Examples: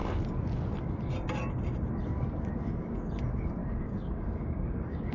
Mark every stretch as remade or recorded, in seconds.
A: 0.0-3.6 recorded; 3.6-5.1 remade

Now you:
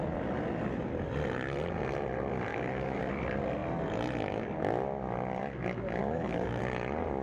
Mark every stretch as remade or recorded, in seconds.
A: 0.0-2.5 recorded; 2.5-3.1 remade; 3.1-6.0 recorded; 6.0-6.6 remade; 6.6-7.2 recorded

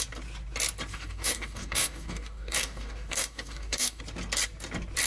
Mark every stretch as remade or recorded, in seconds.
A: 0.0-0.9 recorded; 0.9-4.0 remade; 4.0-5.1 recorded

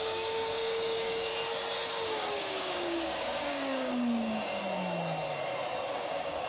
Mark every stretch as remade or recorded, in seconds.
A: 0.0-1.3 remade; 1.3-1.9 recorded; 1.9-4.6 remade; 4.6-5.9 recorded; 5.9-6.5 remade

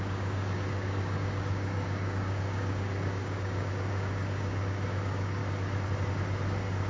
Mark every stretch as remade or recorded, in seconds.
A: 0.0-5.4 remade; 5.4-6.9 recorded

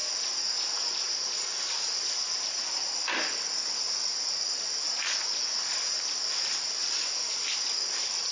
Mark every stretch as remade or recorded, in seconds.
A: 0.0-8.3 recorded

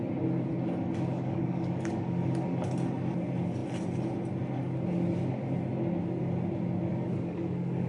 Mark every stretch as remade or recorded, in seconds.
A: 0.0-1.1 recorded; 1.1-2.7 remade; 2.7-6.9 recorded; 6.9-7.9 remade

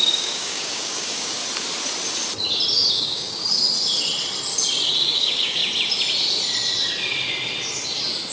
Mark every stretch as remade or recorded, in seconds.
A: 0.0-1.4 remade; 1.4-2.9 recorded; 2.9-3.4 remade; 3.4-5.0 recorded; 5.0-5.6 remade; 5.6-8.3 recorded